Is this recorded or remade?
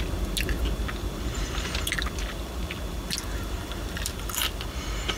recorded